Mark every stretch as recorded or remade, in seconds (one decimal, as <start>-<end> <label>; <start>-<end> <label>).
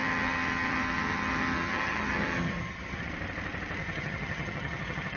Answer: 0.0-3.1 remade; 3.1-3.8 recorded; 3.8-5.2 remade